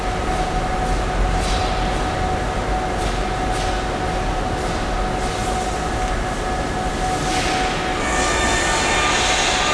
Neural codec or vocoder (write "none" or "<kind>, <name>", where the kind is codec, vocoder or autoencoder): none